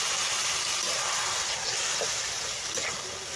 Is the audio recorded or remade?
recorded